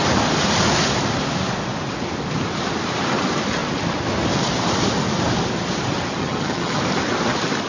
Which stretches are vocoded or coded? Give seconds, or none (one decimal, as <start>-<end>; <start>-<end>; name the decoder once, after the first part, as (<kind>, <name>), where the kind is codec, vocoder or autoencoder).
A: 6.2-6.8 (vocoder, HiFi-GAN)